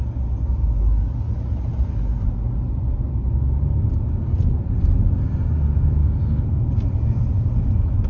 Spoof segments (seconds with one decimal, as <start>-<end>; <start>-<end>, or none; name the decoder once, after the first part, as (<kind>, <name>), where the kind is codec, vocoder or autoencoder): 6.0-6.7 (codec, SNAC)